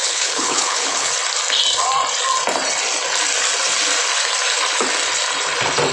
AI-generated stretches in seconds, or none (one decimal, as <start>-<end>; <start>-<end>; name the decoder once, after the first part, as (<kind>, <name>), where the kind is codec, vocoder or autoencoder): 0.0-1.1 (codec, HILCodec)